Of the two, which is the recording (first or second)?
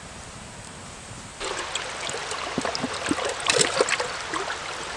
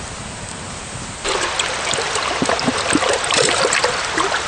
first